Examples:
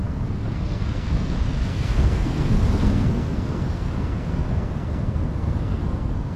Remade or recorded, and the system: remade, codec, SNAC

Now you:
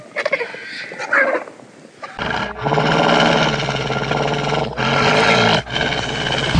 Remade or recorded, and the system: recorded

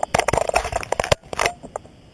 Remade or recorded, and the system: recorded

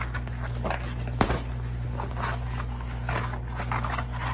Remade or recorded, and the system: recorded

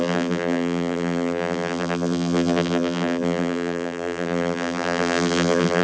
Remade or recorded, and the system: remade, vocoder, BigVGAN v2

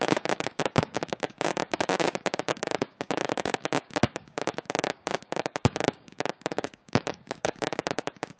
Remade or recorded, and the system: remade, codec, DAC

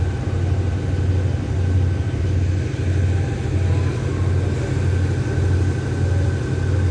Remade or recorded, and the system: recorded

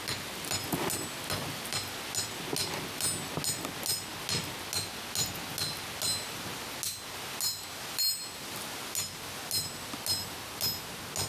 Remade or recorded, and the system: recorded